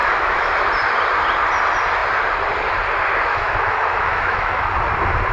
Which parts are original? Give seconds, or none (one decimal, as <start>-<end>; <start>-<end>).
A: 0.5-3.3; 4.6-5.3